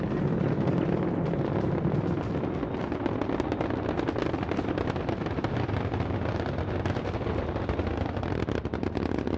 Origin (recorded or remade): recorded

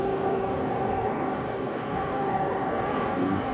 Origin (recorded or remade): remade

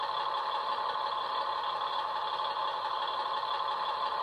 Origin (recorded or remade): recorded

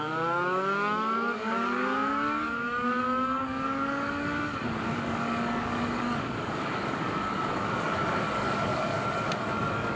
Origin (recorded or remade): remade